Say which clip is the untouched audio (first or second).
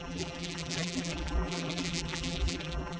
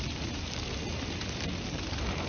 second